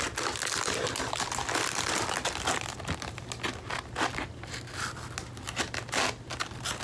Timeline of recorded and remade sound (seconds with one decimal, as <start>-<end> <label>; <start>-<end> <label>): 0.0-6.8 recorded